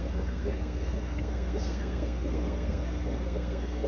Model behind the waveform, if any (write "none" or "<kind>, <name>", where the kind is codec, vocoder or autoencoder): codec, SNAC